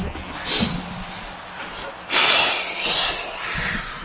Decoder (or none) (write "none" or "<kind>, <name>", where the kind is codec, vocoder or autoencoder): none